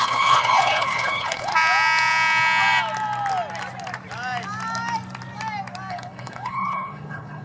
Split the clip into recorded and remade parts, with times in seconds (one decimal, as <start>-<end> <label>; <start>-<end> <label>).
0.0-1.5 remade; 1.5-5.9 recorded; 5.9-7.4 remade